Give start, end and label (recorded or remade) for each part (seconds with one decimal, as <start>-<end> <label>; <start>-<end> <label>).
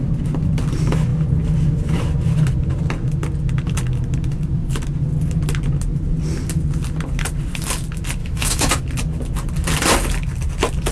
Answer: 0.0-8.2 recorded; 8.2-8.7 remade; 8.7-10.9 recorded